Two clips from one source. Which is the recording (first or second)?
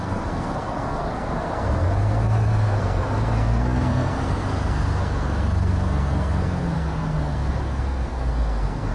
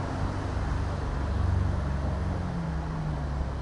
second